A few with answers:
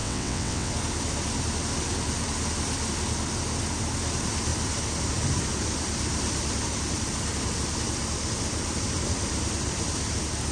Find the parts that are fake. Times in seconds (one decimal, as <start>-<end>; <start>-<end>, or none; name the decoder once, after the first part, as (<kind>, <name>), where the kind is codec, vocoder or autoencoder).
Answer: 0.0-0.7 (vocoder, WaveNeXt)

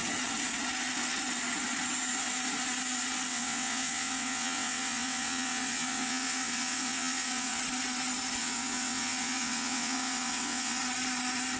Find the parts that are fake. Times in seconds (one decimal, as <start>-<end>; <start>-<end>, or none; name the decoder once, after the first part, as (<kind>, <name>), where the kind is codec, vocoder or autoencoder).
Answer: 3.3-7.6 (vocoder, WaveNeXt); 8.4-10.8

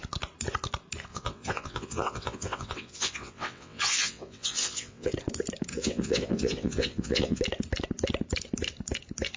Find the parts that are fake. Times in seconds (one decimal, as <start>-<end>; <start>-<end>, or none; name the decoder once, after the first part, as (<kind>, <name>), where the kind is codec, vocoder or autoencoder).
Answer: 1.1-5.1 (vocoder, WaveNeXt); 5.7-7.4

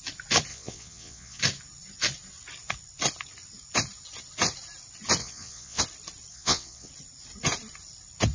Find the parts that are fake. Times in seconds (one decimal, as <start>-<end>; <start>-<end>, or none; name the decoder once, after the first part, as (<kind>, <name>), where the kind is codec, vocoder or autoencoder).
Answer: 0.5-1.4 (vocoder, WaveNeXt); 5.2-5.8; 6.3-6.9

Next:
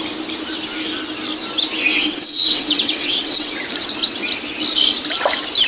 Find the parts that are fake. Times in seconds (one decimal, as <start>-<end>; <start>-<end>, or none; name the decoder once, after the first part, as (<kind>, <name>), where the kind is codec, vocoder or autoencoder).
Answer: 1.9-3.5 (vocoder, WaveNeXt)

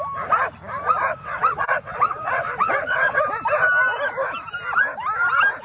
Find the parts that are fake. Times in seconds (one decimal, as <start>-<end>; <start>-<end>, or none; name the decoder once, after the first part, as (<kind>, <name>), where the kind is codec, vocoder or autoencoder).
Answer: 1.1-3.2 (vocoder, WaveNeXt)

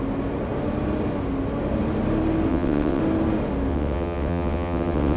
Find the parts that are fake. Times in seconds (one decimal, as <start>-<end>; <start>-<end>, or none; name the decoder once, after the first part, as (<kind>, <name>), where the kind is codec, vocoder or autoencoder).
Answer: 2.5-3.0 (vocoder, WaveNeXt); 3.7-5.2